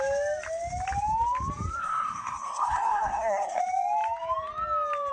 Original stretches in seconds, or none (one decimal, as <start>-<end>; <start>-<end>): 0.0-1.8; 3.6-5.1

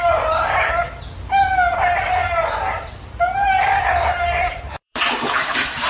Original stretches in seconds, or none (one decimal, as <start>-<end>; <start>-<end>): 0.7-2.2

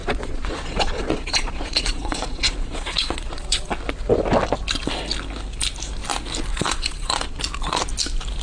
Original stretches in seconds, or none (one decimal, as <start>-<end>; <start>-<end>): 3.7-6.5; 7.1-8.4